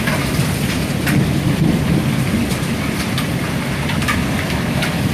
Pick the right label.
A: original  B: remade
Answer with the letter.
A